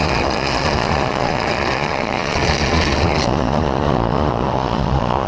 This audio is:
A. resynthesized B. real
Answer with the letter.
A